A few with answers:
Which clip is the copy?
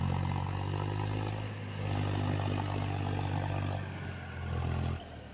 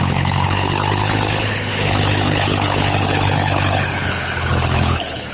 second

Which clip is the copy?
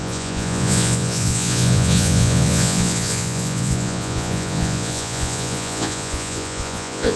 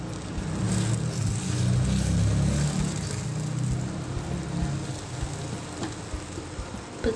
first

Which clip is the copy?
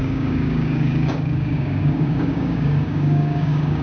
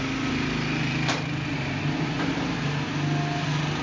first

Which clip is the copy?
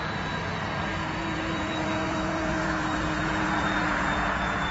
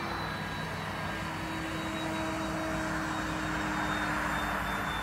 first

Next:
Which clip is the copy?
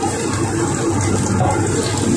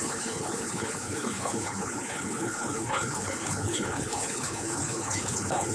second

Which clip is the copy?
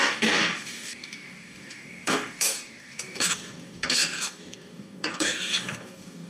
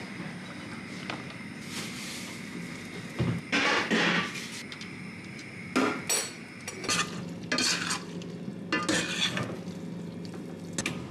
first